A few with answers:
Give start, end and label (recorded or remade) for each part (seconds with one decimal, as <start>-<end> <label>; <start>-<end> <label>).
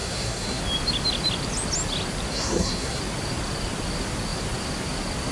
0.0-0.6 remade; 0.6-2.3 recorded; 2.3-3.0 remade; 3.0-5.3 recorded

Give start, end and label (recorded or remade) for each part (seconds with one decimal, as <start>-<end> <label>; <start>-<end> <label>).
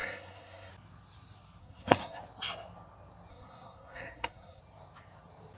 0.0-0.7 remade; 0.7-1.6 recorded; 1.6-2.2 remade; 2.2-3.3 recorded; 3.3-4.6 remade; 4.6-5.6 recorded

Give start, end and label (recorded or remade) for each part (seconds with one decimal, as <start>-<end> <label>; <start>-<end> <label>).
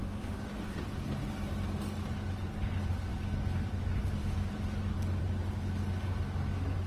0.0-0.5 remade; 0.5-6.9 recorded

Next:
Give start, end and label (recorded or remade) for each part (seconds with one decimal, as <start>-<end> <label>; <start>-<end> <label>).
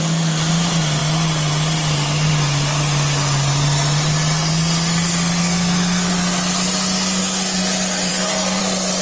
0.0-5.4 recorded; 5.4-6.1 remade; 6.1-8.1 recorded; 8.1-8.6 remade; 8.6-9.0 recorded